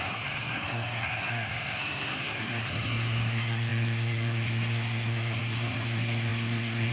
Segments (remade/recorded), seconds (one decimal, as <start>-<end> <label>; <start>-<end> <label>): 0.0-6.9 remade